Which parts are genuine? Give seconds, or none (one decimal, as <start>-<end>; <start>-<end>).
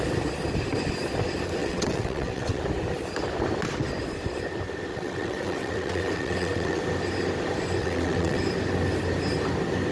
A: 0.0-1.6; 2.6-4.9; 6.8-7.8; 8.4-9.9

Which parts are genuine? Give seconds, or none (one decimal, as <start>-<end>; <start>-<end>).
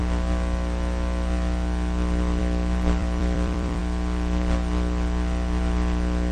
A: 0.0-3.0; 3.8-6.3